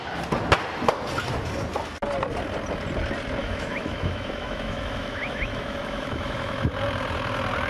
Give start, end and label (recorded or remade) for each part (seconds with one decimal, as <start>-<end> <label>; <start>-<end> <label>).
0.0-3.4 recorded; 3.4-6.7 remade; 6.7-7.7 recorded